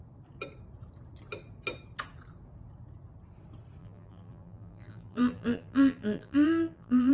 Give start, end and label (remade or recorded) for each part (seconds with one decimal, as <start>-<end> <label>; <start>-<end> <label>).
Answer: 0.0-3.8 recorded; 3.8-7.1 remade